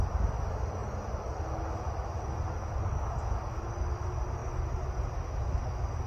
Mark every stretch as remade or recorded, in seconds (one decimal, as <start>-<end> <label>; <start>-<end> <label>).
0.0-6.1 recorded